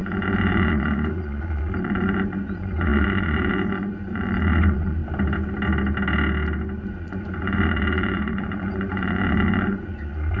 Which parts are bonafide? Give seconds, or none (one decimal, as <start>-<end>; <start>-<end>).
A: 5.0-6.8